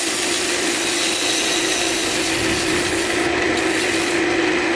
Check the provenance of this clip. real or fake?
real